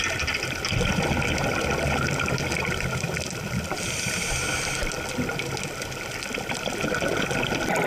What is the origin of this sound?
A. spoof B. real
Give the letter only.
B